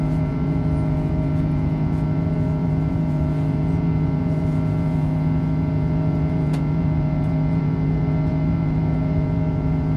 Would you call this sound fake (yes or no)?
yes